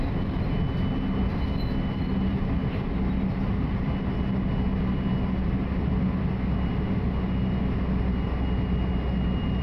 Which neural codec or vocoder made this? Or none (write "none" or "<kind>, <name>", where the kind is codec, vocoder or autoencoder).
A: none